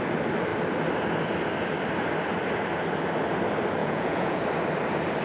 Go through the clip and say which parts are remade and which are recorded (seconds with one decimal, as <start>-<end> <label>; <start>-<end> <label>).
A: 0.0-3.8 recorded; 3.8-4.4 remade; 4.4-5.2 recorded